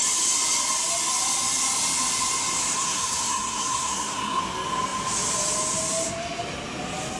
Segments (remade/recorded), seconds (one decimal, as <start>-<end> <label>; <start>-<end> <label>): 0.0-2.6 recorded; 2.6-4.4 remade; 4.4-7.2 recorded